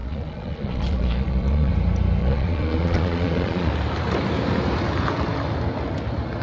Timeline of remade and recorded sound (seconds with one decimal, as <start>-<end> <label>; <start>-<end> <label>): 0.0-1.7 remade; 1.7-2.2 recorded; 2.2-3.7 remade; 3.7-6.4 recorded